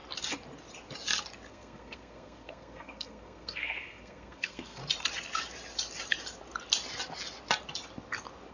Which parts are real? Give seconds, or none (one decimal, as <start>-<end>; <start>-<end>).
0.0-1.5; 4.8-8.5

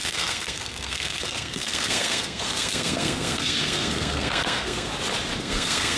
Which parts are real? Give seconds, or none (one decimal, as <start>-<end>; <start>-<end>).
4.9-5.4

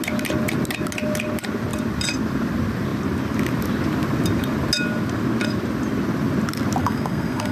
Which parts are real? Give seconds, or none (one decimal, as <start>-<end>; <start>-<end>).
0.0-6.8

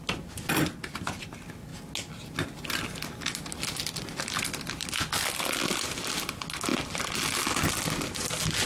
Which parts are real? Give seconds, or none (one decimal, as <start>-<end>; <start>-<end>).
0.0-8.7

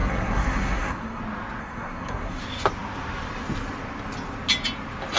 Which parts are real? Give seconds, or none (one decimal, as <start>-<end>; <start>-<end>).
1.2-1.6; 2.4-5.2

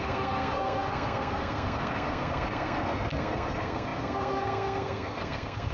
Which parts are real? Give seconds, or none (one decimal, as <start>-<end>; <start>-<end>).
none

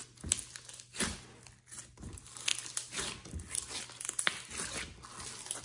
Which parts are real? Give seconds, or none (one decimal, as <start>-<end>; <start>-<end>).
0.0-5.6